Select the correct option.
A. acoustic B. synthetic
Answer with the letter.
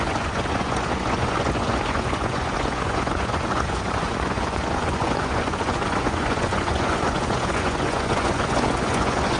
B